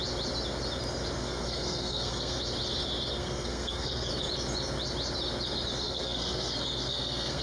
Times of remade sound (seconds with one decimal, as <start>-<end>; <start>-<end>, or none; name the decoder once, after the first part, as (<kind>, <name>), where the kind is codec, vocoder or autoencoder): 1.2-2.4 (codec, SNAC); 3.2-4.1; 5.8-7.4